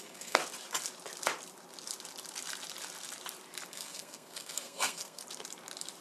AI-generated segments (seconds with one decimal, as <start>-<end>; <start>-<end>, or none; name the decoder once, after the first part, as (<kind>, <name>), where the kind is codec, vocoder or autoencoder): 0.0-0.4 (codec, SNAC); 3.7-5.2